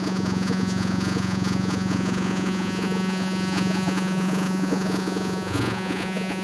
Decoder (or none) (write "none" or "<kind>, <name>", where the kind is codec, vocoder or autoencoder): vocoder, Vocos